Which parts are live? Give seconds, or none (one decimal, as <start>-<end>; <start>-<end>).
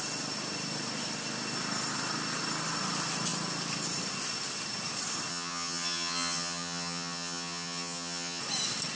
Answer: 0.0-5.3; 8.4-9.0